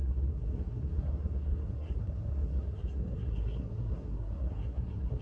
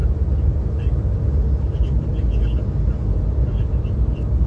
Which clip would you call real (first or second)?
second